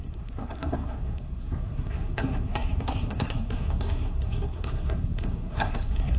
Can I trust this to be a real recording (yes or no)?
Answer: no